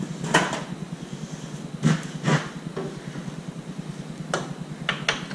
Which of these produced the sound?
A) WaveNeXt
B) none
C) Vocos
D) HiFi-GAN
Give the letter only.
B